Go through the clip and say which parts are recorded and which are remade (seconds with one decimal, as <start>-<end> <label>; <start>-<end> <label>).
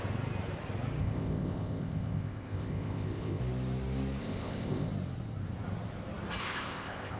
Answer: 0.0-1.0 recorded; 1.0-3.4 remade; 3.4-4.2 recorded; 4.2-4.9 remade; 4.9-6.4 recorded; 6.4-7.2 remade